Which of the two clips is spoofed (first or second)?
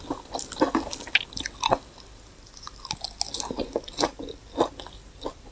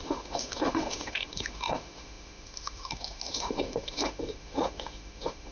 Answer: second